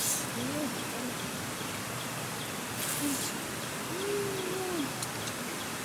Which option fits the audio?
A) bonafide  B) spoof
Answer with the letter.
A